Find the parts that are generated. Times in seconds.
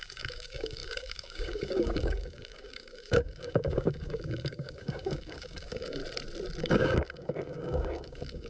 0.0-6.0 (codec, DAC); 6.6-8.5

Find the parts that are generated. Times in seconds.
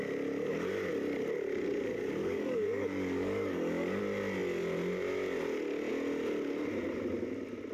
2.2-4.0 (codec, DAC)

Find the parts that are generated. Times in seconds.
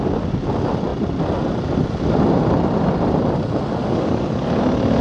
3.8-4.6 (codec, DAC)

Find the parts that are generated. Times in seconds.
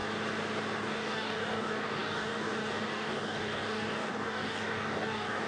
0.8-5.5 (codec, DAC)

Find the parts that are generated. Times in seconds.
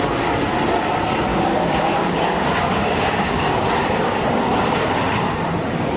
1.3-4.9 (codec, DAC)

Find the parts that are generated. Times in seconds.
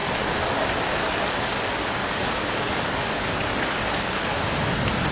2.0-3.8 (codec, DAC)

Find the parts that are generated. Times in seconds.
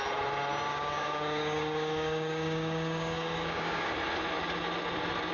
0.7-3.9 (codec, DAC)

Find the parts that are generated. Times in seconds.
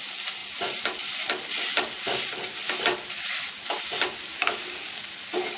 4.5-5.1 (codec, DAC)